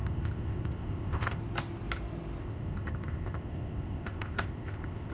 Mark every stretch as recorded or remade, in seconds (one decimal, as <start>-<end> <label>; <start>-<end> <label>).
0.0-1.4 remade; 1.4-2.4 recorded; 2.4-5.1 remade